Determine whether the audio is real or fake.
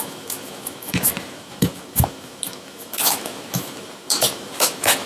fake